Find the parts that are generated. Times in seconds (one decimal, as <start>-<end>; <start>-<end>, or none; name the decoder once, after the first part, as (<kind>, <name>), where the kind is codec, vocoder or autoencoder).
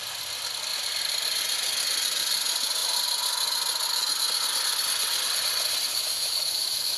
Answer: 5.9-7.0 (autoencoder, DAC-VAE)